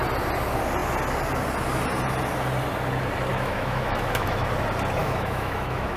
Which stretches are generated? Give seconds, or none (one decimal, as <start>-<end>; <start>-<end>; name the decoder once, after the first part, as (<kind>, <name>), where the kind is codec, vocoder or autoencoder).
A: 3.3-4.5 (autoencoder, DAC-VAE); 5.0-6.0